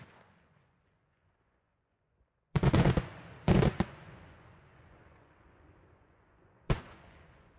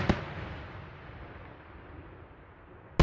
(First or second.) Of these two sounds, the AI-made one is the first